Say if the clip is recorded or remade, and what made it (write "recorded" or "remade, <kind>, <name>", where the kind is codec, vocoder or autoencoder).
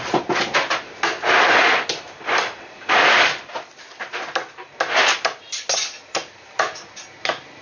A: recorded